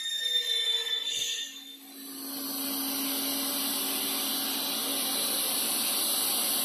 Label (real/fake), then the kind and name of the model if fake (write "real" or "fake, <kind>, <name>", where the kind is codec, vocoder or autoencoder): real